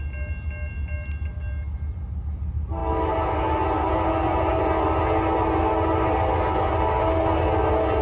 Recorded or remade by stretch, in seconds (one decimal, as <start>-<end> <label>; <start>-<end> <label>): 0.0-8.0 recorded